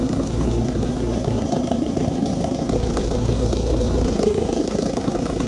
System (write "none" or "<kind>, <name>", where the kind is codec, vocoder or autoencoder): codec, SNAC